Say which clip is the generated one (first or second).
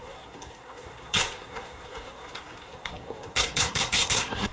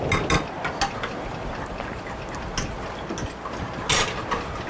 first